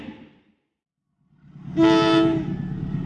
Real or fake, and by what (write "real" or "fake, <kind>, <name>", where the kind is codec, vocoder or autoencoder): real